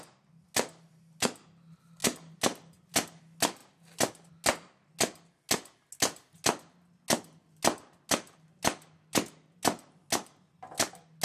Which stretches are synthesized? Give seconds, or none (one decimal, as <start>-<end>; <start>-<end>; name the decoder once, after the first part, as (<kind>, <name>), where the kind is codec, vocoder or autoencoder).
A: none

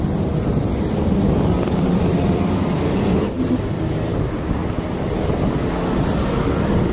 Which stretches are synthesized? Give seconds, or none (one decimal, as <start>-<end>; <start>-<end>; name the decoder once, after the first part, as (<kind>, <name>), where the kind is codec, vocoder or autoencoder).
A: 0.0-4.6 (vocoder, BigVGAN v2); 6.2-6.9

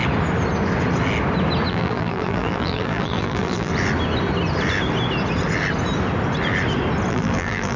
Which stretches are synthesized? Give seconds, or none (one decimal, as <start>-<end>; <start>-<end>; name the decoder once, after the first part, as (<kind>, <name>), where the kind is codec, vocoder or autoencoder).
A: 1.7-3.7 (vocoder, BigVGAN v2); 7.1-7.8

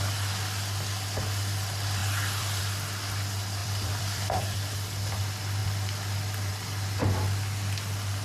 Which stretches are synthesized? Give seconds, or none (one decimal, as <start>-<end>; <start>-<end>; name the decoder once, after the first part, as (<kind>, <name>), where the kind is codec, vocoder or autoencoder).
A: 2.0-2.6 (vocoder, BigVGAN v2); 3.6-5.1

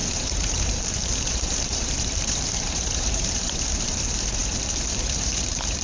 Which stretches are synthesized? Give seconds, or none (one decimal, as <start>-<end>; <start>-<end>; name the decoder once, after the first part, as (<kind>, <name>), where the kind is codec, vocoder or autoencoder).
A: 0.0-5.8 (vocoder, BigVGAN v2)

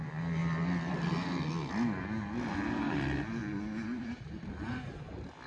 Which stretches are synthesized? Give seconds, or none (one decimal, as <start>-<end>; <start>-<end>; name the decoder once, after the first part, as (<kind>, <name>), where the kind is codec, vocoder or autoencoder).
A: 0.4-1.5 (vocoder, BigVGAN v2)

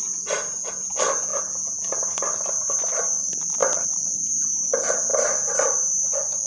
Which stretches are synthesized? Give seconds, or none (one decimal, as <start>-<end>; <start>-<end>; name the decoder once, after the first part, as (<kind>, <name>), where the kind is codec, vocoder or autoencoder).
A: 3.6-4.2 (vocoder, BigVGAN v2)